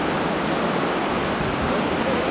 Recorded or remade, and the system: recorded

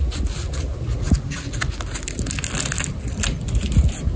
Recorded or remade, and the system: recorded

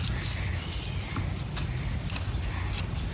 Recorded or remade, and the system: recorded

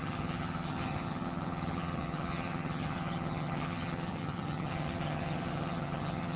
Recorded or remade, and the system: remade, vocoder, HiFi-GAN